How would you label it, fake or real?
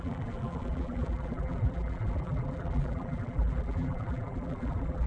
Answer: fake